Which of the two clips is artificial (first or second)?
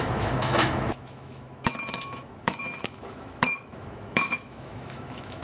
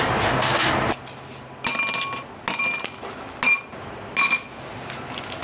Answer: first